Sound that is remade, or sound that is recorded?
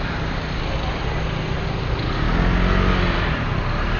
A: recorded